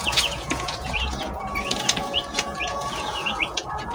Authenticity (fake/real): fake